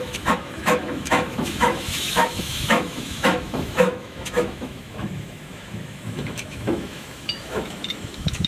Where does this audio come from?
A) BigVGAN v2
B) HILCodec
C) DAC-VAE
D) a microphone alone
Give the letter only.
C